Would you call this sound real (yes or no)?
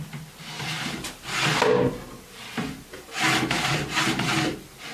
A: yes